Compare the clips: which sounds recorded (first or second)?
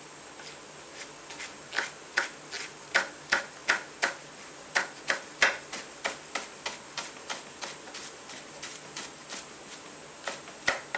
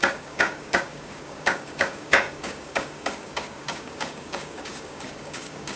first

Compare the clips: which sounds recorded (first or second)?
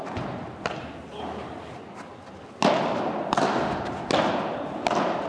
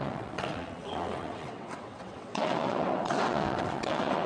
first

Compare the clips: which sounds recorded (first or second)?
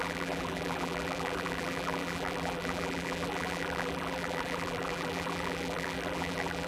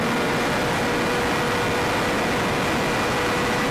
second